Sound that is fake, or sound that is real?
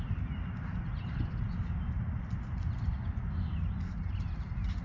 real